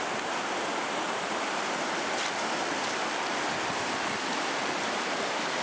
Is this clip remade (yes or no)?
no